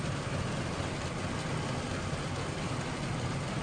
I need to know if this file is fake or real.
real